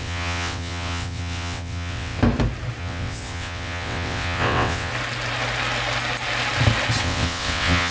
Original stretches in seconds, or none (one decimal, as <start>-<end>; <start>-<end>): 2.2-2.8; 4.9-7.0